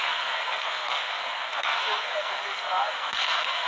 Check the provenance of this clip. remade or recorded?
remade